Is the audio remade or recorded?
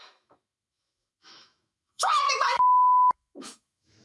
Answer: remade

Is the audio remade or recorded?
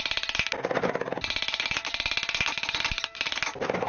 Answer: recorded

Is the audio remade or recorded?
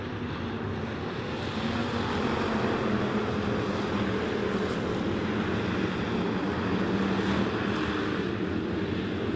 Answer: recorded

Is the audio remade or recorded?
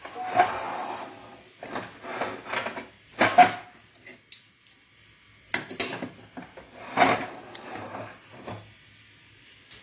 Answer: recorded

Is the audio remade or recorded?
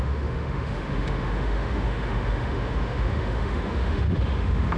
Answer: remade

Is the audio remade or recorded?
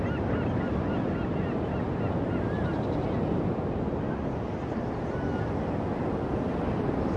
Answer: recorded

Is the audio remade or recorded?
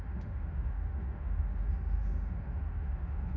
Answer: remade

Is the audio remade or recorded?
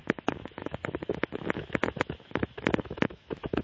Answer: remade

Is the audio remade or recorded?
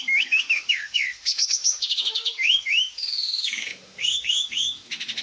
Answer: remade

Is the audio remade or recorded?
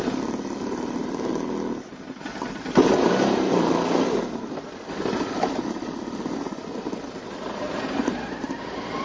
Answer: recorded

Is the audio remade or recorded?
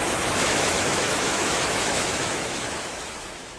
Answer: remade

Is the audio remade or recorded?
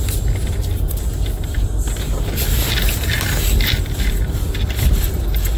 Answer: recorded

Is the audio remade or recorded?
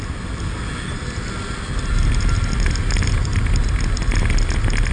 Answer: recorded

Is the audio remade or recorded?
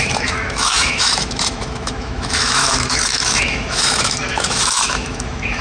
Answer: remade